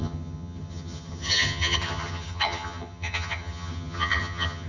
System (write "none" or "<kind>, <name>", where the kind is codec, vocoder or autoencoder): vocoder, HiFi-GAN